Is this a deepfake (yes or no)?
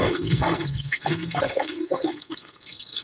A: yes